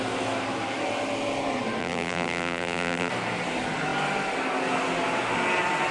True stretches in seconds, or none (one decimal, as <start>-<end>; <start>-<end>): 0.0-1.8; 3.1-5.9